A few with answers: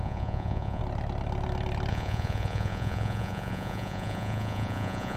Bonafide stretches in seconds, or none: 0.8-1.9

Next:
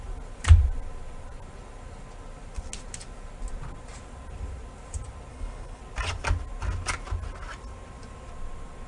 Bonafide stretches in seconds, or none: 0.0-5.3; 5.8-8.9

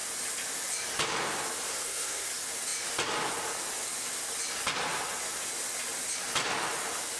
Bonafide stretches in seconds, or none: 0.0-1.7; 2.3-7.2

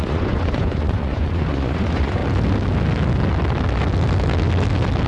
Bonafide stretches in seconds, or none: 2.2-5.1

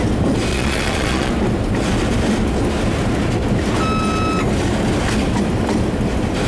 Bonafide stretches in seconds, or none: 0.0-0.5; 1.3-6.5

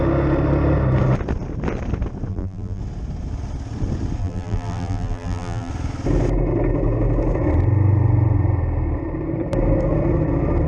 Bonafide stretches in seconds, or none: 0.0-2.3; 2.8-4.2; 5.7-10.7

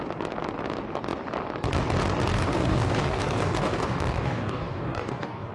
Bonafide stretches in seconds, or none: 0.0-2.3